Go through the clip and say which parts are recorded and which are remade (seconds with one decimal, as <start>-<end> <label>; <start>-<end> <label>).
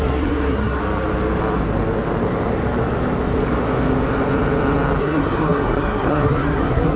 0.0-0.8 remade; 0.8-5.0 recorded; 5.0-7.0 remade